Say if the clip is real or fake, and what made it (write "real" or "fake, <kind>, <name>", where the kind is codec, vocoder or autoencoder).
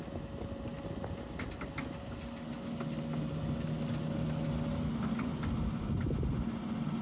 real